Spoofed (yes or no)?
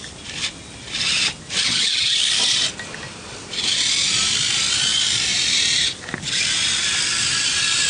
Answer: yes